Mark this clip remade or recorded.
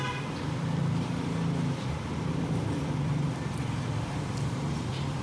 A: remade